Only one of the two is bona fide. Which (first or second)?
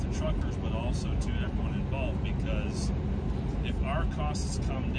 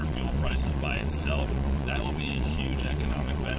first